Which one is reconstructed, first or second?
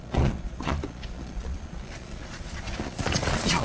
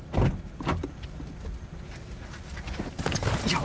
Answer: first